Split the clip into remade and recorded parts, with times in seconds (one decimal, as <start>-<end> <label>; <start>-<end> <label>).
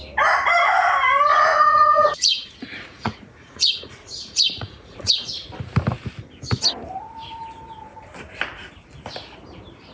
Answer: 0.0-1.3 recorded; 1.3-5.1 remade; 5.1-9.9 recorded